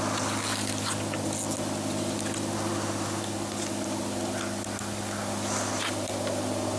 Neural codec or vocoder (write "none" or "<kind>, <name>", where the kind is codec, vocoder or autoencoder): none